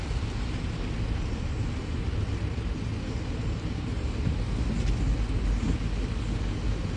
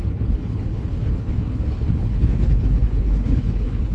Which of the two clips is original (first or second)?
first